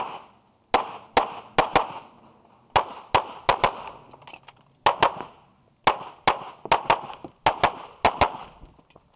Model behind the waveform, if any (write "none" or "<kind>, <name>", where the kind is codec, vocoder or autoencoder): none